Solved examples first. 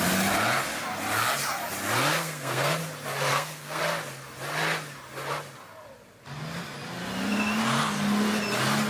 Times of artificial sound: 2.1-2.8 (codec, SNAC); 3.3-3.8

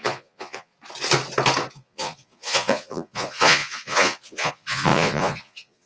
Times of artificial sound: 0.0-0.7 (vocoder, Vocos); 1.7-5.9

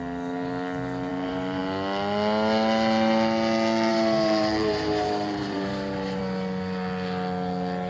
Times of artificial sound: 1.1-1.6 (vocoder, BigVGAN v2); 3.9-6.2

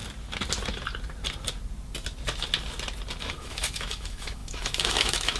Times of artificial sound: 3.2-5.4 (autoencoder, DAC-VAE)

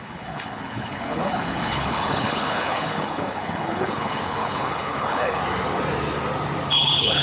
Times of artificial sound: 0.0-5.4 (codec, HILCodec); 6.7-7.2

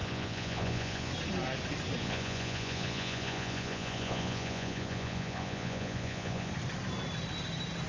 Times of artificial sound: 0.0-1.1 (vocoder, Vocos); 2.0-6.5

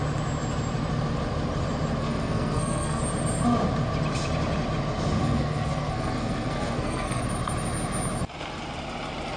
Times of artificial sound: 2.0-3.0 (codec, SNAC); 5.2-7.2

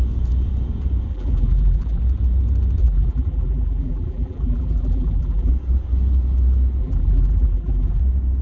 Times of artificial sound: 1.1-2.0 (vocoder, BigVGAN v2); 2.8-5.5; 6.8-8.0